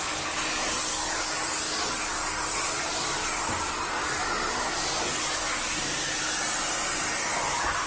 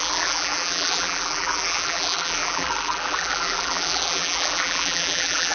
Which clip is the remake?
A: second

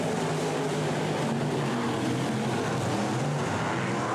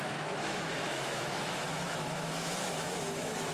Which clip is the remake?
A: second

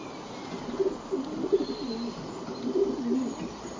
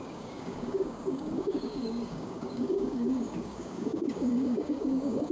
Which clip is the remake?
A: second